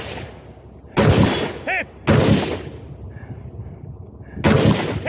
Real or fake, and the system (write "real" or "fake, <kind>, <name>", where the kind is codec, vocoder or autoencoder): real